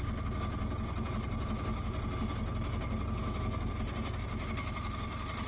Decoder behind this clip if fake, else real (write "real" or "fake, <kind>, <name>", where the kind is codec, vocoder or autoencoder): real